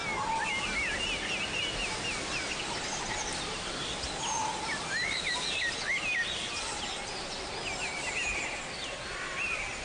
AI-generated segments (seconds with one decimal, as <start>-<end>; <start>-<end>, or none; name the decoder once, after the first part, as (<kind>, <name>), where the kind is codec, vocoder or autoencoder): none